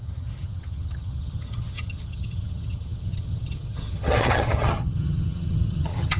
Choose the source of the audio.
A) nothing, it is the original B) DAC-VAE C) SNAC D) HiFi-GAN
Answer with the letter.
D